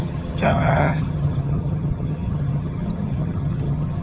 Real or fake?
fake